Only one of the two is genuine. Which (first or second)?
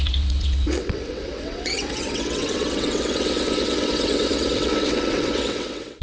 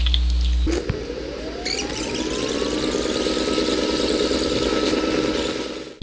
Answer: second